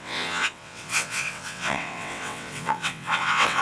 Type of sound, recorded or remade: remade